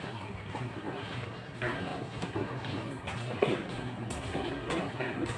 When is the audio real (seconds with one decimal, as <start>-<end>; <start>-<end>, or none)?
none